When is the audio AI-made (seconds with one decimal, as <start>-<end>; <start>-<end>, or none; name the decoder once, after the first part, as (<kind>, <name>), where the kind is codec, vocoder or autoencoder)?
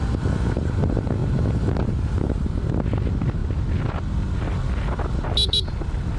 none